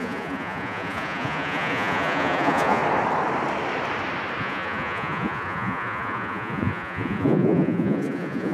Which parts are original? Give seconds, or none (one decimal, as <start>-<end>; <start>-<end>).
2.8-4.4